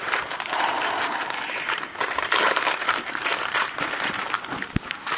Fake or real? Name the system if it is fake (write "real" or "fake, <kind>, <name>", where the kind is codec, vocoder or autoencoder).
fake, vocoder, BigVGAN v2